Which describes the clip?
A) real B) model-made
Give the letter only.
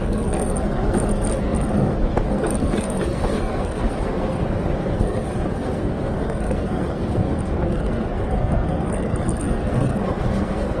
B